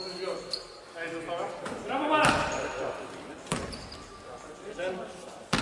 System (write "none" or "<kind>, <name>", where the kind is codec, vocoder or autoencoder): none